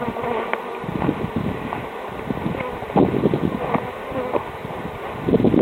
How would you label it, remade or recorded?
recorded